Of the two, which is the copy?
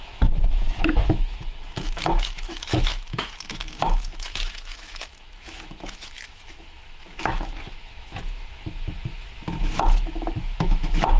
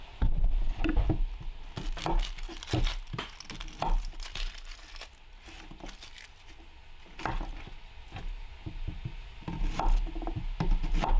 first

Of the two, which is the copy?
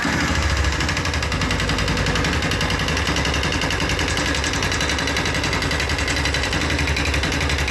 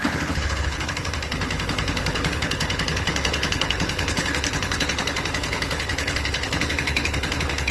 second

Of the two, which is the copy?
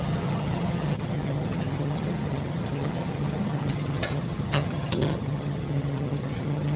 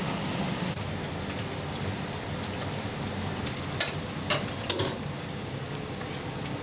first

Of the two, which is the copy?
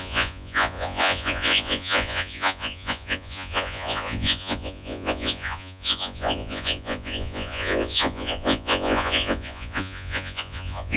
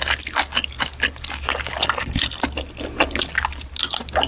first